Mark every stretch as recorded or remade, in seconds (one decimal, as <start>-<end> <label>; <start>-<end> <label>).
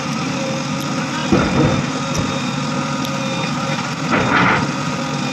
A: 0.0-5.3 recorded